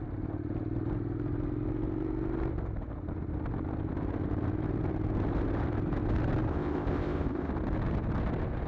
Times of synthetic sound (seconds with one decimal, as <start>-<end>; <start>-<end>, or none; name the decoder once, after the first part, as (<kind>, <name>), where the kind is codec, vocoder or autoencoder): 6.5-7.5 (codec, ZipCodec)

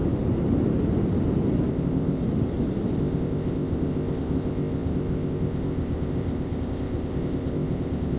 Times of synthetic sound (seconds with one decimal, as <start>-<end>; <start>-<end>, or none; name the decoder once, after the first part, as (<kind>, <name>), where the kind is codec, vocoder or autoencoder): 1.7-2.2 (codec, ZipCodec); 3.0-8.2

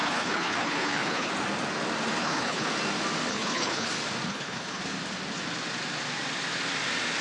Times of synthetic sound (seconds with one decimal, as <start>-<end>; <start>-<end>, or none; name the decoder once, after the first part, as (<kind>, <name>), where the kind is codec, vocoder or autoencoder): 0.0-1.3 (codec, HILCodec); 2.2-2.7; 3.3-3.9; 4.3-4.8

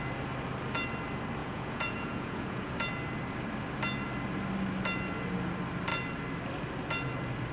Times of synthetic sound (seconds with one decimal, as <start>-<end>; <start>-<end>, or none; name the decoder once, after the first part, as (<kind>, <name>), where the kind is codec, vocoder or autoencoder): 1.4-2.7 (vocoder, Vocos)